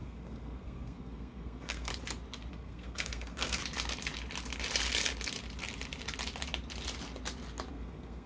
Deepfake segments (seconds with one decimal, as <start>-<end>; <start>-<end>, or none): 0.0-1.9; 2.5-3.6; 7.7-8.3